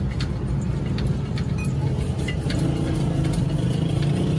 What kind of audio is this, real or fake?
real